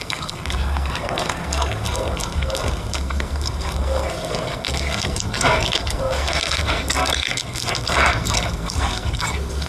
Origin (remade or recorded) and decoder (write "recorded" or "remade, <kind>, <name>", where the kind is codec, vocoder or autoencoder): remade, codec, SNAC